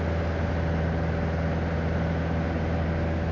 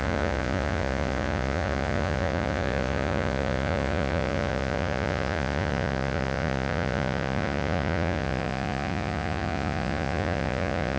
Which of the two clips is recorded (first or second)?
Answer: first